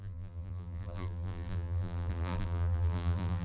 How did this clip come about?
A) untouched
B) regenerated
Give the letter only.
B